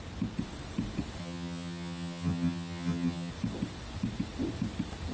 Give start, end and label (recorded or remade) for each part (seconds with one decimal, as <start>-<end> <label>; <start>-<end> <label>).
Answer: 0.0-1.2 recorded; 1.2-3.3 remade; 3.3-5.1 recorded